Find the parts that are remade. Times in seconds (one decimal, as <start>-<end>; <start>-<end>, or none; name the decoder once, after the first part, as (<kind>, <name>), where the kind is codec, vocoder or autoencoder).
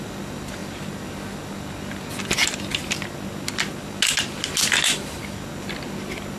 none